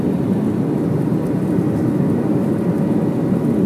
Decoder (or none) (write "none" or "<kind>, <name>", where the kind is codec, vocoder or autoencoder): none